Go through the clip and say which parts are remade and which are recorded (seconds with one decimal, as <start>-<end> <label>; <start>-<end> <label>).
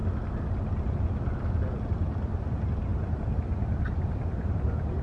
0.0-2.9 recorded; 2.9-4.5 remade; 4.5-5.0 recorded